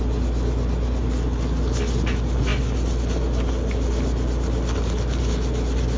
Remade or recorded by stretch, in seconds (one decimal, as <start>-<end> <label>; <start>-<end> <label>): 0.0-6.0 recorded